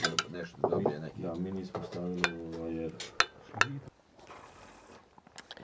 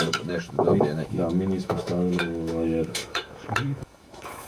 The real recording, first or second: first